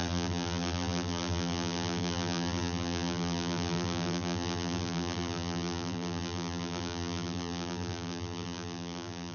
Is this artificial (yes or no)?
yes